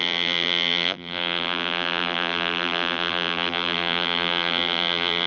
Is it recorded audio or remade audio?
remade